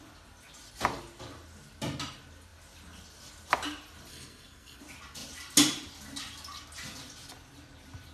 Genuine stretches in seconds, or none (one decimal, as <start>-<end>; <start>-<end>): 0.0-4.1; 4.8-8.1